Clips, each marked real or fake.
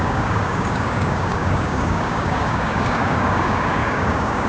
fake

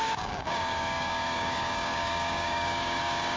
fake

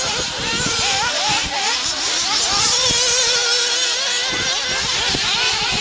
real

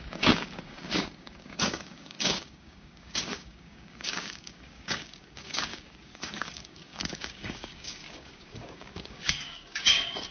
fake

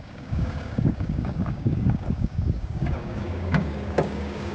fake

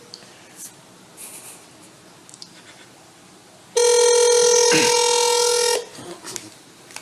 real